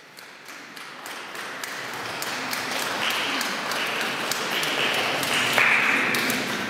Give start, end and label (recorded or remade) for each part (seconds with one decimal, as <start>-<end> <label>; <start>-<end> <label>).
0.0-6.7 recorded